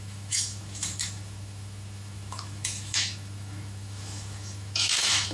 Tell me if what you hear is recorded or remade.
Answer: remade